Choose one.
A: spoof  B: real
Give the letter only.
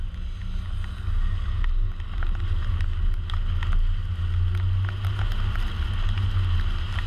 B